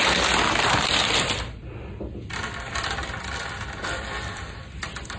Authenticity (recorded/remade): recorded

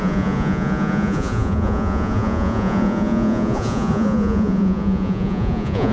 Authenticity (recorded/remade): remade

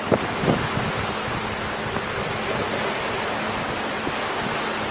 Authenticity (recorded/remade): recorded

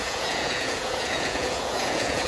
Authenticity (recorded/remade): remade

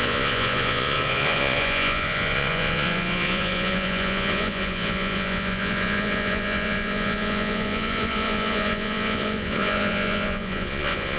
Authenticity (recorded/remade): remade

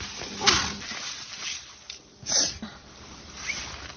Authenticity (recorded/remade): recorded